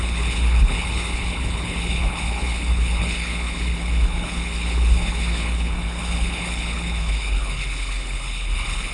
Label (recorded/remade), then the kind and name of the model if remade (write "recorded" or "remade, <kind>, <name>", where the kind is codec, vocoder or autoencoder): remade, codec, HILCodec